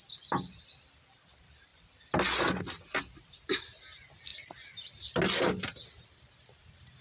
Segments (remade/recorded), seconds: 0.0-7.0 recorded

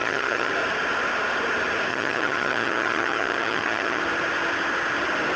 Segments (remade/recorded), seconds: 0.0-0.5 remade; 0.5-1.9 recorded; 1.9-4.0 remade; 4.0-5.4 recorded

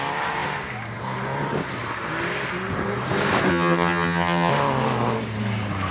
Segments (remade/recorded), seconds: 0.0-3.5 recorded; 3.5-4.5 remade; 4.5-5.9 recorded

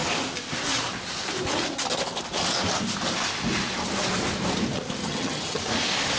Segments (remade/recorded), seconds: 0.0-5.0 recorded; 5.0-5.6 remade; 5.6-6.2 recorded

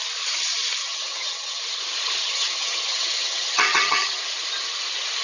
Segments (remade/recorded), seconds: 0.0-0.8 recorded; 0.8-1.6 remade; 1.6-2.2 recorded; 2.2-4.2 remade; 4.2-5.2 recorded

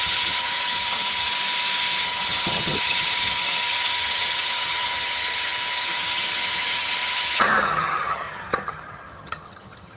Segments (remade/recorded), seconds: 0.0-1.3 remade; 1.3-2.0 recorded; 2.0-10.0 remade

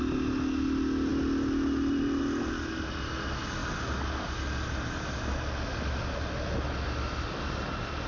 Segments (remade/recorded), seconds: 0.0-8.1 recorded